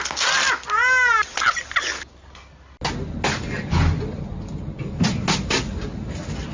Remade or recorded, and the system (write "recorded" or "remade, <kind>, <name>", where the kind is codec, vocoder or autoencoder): recorded